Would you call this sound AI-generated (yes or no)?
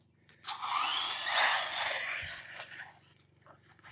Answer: yes